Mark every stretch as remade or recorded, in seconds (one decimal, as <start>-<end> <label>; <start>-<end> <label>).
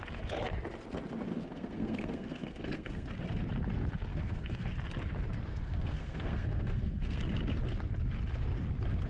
0.0-1.3 recorded; 1.3-3.1 remade; 3.1-4.1 recorded; 4.1-4.7 remade; 4.7-5.5 recorded; 5.5-7.2 remade; 7.2-9.1 recorded